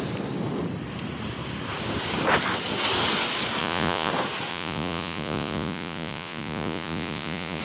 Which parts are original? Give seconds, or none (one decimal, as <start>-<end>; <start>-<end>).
0.0-3.6; 4.1-4.5